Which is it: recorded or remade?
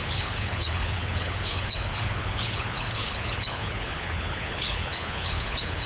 remade